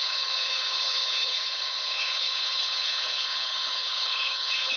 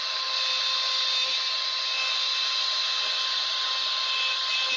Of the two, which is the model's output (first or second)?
first